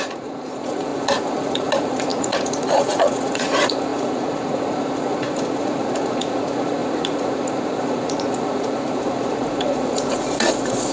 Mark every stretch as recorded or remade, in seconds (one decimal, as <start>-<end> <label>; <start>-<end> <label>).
0.0-10.9 remade